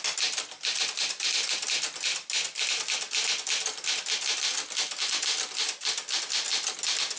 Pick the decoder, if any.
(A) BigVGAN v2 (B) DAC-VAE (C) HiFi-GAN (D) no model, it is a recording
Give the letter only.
D